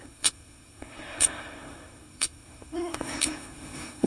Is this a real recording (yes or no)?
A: no